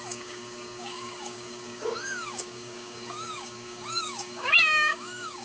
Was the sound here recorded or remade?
remade